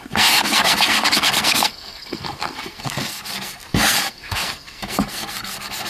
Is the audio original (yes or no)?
no